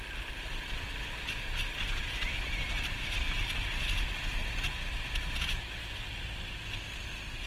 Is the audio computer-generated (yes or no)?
no